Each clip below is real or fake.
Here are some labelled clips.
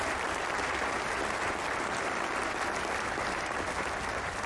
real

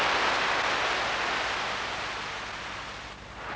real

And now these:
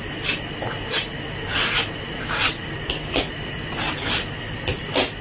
real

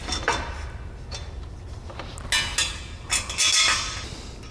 real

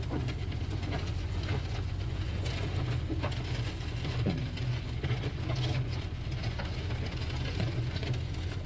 fake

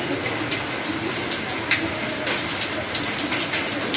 real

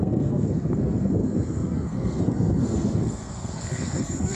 fake